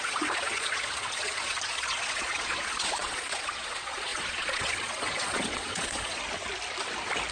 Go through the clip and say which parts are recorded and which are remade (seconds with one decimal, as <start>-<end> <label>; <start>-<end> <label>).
0.0-6.2 remade; 6.2-7.3 recorded